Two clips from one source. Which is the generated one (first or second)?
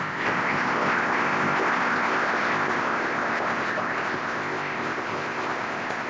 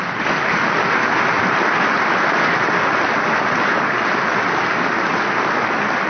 first